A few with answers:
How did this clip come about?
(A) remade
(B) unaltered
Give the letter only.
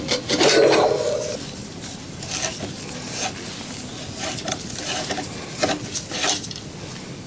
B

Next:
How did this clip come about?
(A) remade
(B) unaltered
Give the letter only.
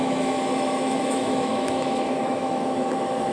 A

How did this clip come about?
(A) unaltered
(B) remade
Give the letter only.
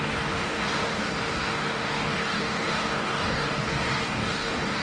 B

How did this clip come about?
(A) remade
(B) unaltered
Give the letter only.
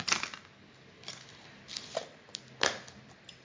B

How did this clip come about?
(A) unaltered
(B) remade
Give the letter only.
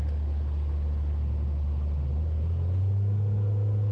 A